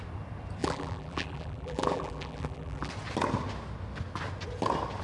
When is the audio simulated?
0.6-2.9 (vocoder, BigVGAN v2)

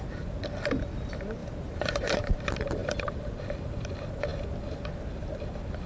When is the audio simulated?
1.4-2.4 (vocoder, BigVGAN v2); 2.8-3.4

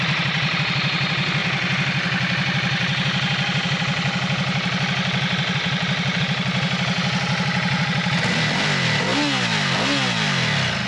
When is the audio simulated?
none

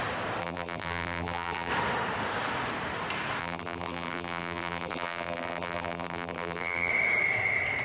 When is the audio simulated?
0.4-1.7 (vocoder, BigVGAN v2); 3.4-6.9

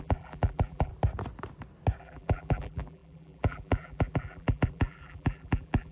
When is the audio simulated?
0.0-0.9 (vocoder, BigVGAN v2); 2.0-5.9

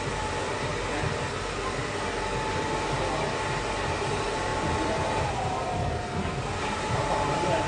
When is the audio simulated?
0.0-0.7 (vocoder, BigVGAN v2); 4.1-4.5; 6.6-7.7

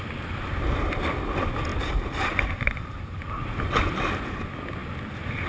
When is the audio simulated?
1.7-3.4 (vocoder, BigVGAN v2)